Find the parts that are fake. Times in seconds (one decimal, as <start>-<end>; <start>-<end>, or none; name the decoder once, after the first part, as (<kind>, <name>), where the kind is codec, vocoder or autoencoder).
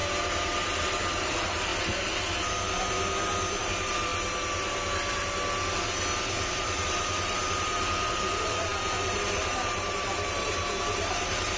0.8-1.7 (vocoder, BigVGAN v2); 3.6-4.1; 6.5-8.7; 9.4-11.6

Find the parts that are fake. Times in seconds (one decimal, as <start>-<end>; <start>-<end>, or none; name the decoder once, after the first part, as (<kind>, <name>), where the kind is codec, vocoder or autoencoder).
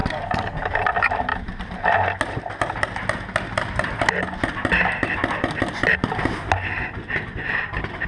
0.0-0.7 (codec, DAC)